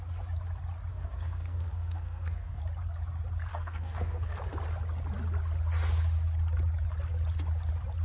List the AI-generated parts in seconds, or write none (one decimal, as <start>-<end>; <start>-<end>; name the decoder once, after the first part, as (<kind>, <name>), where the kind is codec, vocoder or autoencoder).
0.9-2.6 (codec, SNAC); 3.5-4.4